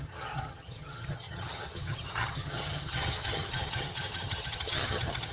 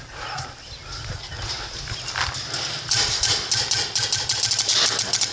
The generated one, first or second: first